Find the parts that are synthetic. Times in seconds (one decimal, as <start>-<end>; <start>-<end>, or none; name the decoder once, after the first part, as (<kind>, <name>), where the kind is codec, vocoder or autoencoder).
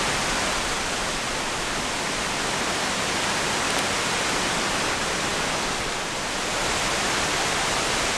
none